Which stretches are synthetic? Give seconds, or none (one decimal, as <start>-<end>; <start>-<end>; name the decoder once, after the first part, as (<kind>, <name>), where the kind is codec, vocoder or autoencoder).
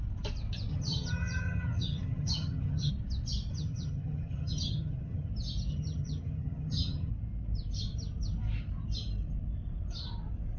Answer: 0.7-2.9 (vocoder, HiFi-GAN); 3.5-5.3; 5.7-7.1